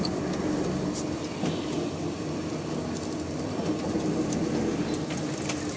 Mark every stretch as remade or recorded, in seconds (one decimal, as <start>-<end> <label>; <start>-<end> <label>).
0.0-5.8 recorded